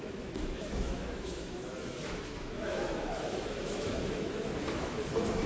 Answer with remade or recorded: remade